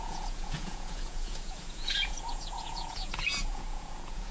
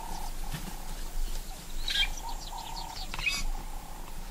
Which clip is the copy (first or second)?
first